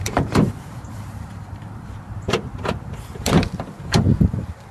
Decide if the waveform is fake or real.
fake